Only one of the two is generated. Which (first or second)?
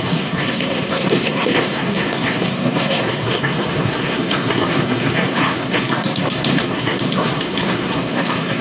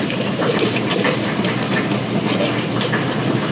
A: first